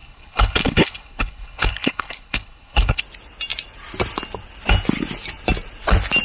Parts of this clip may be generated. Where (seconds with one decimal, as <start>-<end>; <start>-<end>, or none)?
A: 0.0-3.0